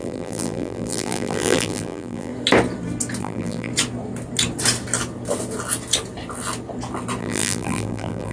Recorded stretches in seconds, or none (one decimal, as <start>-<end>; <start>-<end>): 2.3-3.2; 3.7-7.2